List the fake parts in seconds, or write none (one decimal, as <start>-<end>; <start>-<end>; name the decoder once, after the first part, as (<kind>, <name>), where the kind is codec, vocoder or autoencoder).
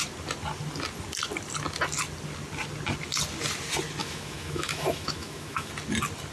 4.0-5.7 (autoencoder, DAC-VAE)